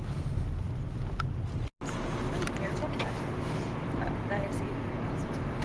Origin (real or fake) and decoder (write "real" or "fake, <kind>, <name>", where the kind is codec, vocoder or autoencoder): real